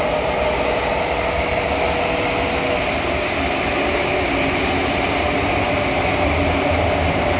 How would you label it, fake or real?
real